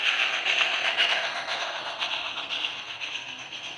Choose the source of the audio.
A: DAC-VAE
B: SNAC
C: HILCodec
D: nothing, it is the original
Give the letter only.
B